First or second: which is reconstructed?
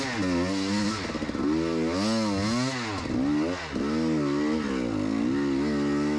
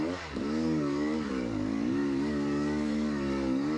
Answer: second